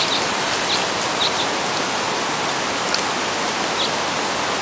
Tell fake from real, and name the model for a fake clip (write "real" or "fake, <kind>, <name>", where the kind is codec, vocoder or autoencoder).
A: real